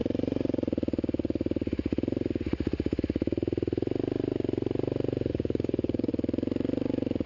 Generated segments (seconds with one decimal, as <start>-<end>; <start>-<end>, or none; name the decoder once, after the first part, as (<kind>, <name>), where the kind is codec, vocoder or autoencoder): 5.3-6.1 (codec, DAC)